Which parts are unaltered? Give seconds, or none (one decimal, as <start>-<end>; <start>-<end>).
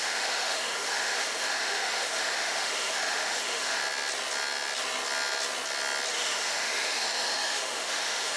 3.8-6.1